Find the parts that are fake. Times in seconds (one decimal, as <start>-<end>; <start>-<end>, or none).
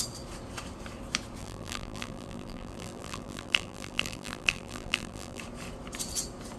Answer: 1.4-5.4